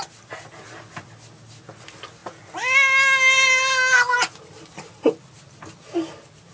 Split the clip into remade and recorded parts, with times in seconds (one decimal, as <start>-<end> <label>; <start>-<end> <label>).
0.0-6.5 recorded